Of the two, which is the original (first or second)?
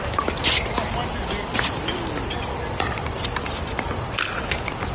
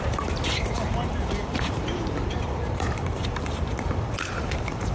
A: first